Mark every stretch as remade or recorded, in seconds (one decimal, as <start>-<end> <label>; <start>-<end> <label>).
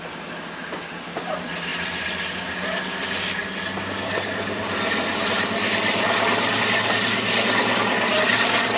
0.0-8.8 recorded